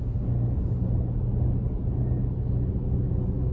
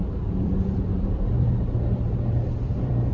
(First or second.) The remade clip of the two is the second